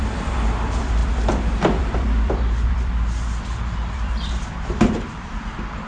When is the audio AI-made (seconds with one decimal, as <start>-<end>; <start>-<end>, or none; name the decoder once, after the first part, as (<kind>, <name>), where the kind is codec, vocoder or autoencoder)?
0.0-5.9 (vocoder, BigVGAN v2)